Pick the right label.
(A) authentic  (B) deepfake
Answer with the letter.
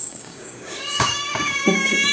B